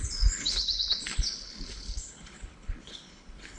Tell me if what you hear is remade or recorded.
remade